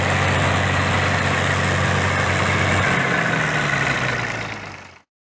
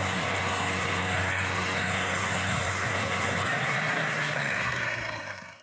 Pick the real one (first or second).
first